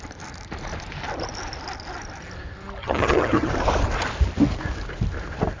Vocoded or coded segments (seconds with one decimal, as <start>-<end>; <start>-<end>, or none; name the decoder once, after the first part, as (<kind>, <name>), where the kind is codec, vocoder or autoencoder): 2.8-3.5 (vocoder, HiFi-GAN)